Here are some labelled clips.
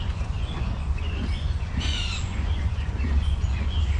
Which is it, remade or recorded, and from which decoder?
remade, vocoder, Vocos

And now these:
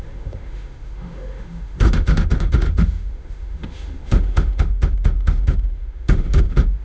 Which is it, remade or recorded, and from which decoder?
remade, autoencoder, DAC-VAE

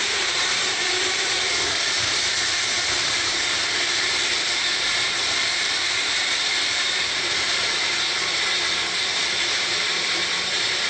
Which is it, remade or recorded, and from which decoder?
remade, vocoder, BigVGAN v2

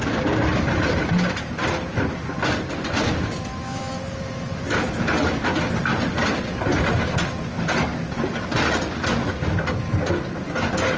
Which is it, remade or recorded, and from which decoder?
recorded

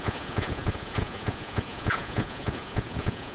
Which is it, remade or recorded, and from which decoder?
remade, vocoder, Vocos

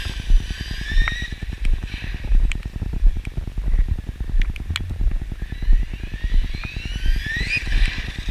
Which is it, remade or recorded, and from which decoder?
recorded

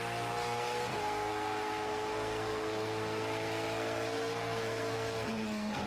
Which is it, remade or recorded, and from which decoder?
remade, codec, SNAC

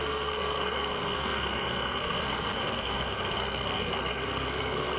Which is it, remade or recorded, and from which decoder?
remade, codec, SNAC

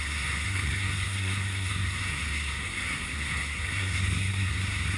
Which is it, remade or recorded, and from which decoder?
remade, codec, SNAC